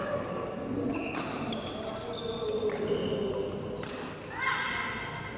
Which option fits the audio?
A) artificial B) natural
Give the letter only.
B